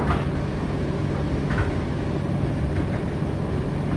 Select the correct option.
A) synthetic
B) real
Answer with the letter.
B